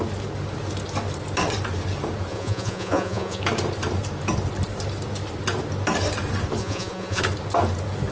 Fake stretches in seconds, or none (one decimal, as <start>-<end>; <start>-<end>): 2.3-3.4; 6.6-7.2